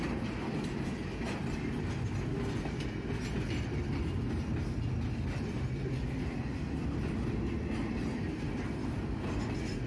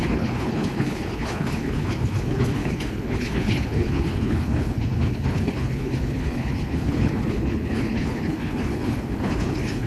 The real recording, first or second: first